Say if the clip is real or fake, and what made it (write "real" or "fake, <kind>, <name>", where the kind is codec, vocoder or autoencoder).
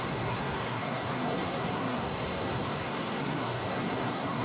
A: fake, codec, SNAC